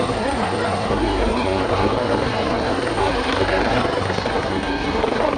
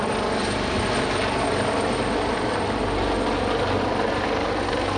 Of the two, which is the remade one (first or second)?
first